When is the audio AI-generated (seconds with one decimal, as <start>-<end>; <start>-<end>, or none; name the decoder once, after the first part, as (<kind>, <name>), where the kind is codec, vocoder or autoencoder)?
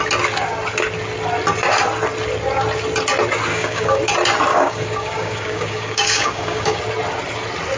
3.5-4.0 (codec, DAC); 4.5-6.8